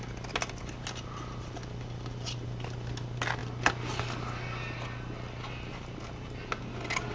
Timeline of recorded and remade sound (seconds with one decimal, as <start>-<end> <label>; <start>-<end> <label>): 0.0-7.1 recorded